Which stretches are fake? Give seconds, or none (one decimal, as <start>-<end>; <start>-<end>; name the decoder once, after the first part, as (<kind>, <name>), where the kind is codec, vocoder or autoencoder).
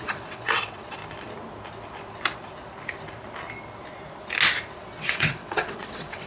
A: 0.0-1.0 (vocoder, WaveNeXt); 4.8-6.3